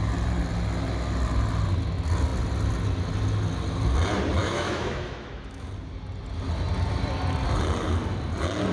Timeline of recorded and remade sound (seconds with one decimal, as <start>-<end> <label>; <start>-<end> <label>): 0.0-4.4 recorded; 4.4-5.7 remade; 5.7-8.7 recorded